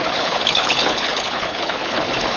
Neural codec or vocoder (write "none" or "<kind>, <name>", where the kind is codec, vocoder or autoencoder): codec, HILCodec